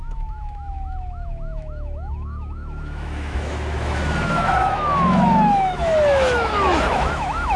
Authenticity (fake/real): fake